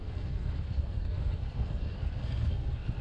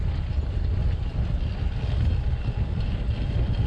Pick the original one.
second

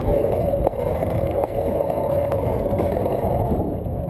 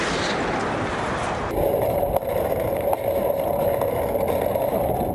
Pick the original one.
second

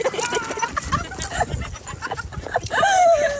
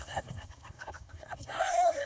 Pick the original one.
first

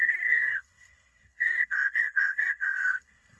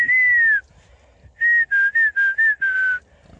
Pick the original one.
second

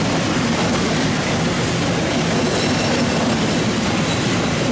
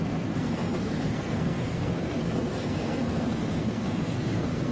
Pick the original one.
first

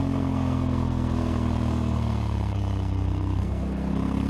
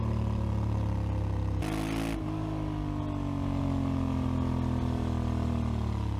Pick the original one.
second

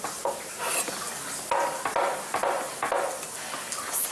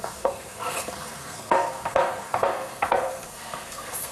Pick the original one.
first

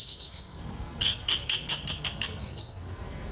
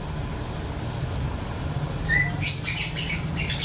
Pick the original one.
second